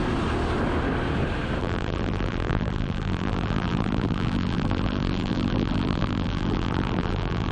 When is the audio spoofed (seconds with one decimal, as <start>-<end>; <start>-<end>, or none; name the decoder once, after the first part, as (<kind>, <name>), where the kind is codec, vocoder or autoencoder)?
1.6-7.5 (vocoder, BigVGAN v2)